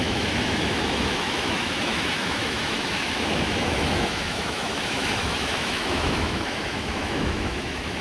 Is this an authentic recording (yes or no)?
no